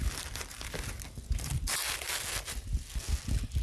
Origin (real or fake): real